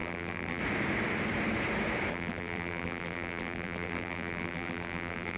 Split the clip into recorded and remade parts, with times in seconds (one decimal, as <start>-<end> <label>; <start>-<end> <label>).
0.0-0.6 remade; 0.6-2.1 recorded; 2.1-5.4 remade